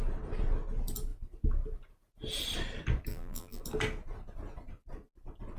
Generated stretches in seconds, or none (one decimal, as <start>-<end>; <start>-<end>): 3.1-3.6